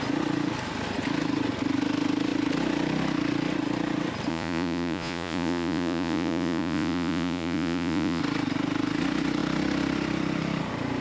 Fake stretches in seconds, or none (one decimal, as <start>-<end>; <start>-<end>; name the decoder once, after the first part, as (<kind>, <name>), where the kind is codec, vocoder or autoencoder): 4.3-8.2 (vocoder, Vocos)